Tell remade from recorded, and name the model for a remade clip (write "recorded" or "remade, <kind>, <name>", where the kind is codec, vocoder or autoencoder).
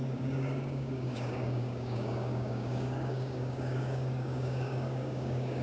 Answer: remade, codec, DAC